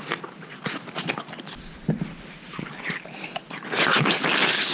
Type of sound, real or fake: real